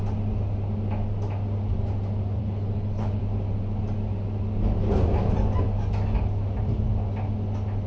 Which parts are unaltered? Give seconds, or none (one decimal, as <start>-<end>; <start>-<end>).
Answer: 0.0-2.4; 3.2-7.9